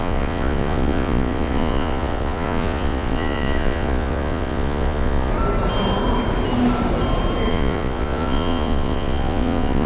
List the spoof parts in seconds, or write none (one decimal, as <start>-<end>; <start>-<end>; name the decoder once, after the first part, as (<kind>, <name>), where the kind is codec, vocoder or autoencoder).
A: 0.0-5.3 (vocoder, Vocos); 7.5-9.9